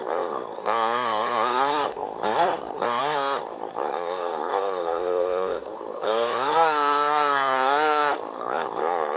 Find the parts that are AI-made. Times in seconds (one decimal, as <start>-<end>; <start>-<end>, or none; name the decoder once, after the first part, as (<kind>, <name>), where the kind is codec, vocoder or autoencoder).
0.0-9.2 (codec, SNAC)